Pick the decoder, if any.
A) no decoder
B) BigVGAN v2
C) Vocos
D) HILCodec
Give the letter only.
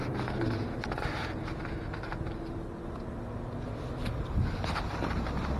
A